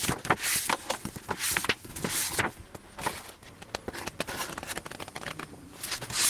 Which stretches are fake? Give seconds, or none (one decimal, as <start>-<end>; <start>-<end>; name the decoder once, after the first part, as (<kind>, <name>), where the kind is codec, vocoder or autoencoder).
1.9-2.4 (vocoder, BigVGAN v2)